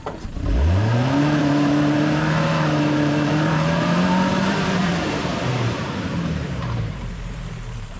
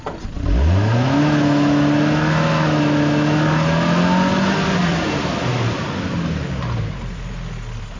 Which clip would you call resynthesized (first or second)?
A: first